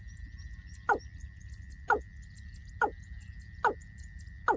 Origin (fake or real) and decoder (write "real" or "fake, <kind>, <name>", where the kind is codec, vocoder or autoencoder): real